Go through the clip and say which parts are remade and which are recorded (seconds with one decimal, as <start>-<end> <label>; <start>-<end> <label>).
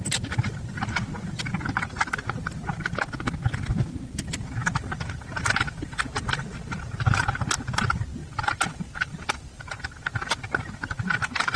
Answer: 0.0-4.6 recorded; 4.6-6.7 remade; 6.7-8.2 recorded; 8.2-9.6 remade; 9.6-11.6 recorded